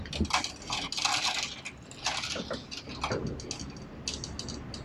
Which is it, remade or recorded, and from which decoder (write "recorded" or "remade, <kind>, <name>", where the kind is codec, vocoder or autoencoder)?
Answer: recorded